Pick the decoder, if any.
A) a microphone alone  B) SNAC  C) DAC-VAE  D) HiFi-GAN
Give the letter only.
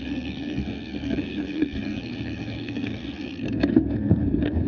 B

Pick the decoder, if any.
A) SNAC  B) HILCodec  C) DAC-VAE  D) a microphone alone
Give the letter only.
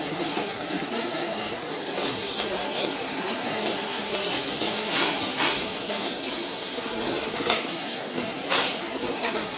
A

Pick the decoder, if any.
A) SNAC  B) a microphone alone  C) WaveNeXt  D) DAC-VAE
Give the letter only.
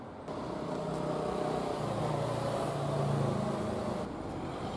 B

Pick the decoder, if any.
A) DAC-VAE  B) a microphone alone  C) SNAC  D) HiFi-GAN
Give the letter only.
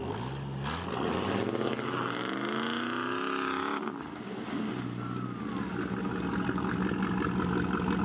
B